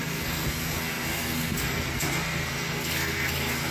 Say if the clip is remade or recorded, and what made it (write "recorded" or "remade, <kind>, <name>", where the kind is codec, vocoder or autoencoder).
remade, codec, SNAC